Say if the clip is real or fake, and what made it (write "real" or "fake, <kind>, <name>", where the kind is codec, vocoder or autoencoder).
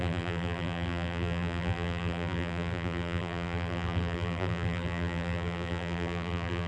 fake, vocoder, BigVGAN v2